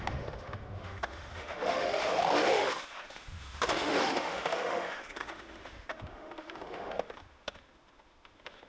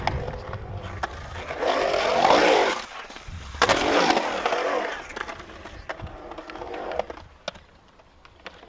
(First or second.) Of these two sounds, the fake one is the first